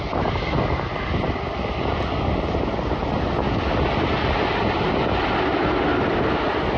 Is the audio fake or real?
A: real